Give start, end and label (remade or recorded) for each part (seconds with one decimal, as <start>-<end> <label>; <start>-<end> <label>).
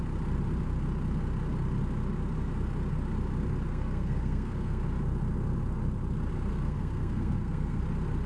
0.0-3.7 recorded; 3.7-4.8 remade; 4.8-6.5 recorded; 6.5-7.8 remade; 7.8-8.3 recorded